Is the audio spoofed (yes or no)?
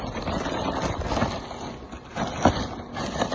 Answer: no